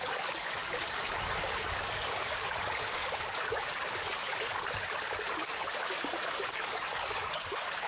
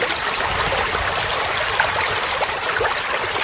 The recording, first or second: second